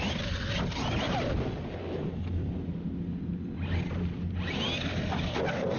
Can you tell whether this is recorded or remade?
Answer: recorded